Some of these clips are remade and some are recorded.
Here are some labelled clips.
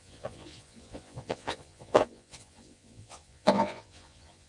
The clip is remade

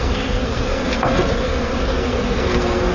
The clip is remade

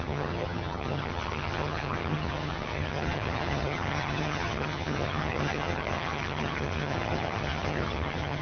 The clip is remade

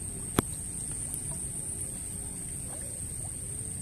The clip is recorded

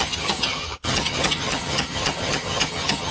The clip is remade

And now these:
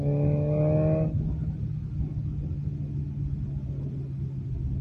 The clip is recorded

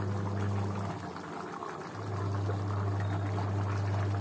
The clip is recorded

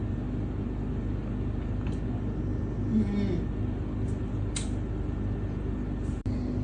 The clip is recorded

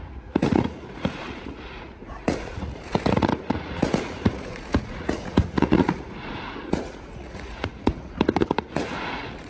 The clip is remade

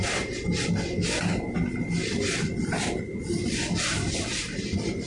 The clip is recorded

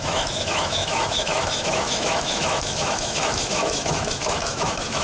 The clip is remade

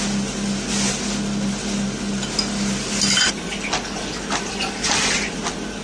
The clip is recorded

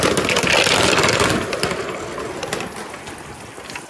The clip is recorded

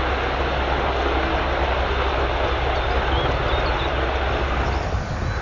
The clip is recorded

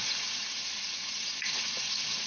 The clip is remade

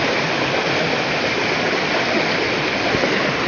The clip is recorded